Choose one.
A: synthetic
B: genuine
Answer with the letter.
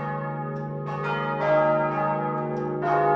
B